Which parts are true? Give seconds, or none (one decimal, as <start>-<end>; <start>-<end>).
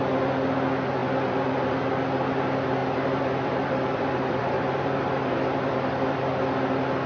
0.0-1.0; 1.9-2.8; 6.2-7.1